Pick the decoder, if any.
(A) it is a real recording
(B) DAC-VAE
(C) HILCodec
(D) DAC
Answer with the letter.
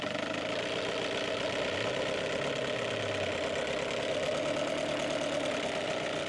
A